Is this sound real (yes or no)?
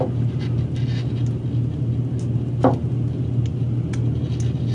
yes